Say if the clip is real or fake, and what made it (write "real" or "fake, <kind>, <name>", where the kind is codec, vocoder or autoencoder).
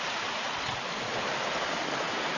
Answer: fake, vocoder, BigVGAN v2